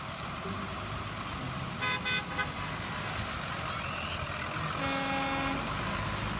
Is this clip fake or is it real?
real